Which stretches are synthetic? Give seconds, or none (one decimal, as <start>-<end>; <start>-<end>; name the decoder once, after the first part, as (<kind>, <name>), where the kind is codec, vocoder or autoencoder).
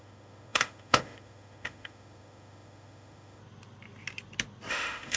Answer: 0.0-3.4 (autoencoder, DAC-VAE); 4.7-5.2